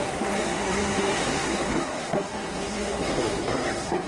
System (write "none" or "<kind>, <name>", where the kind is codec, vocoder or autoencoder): codec, SNAC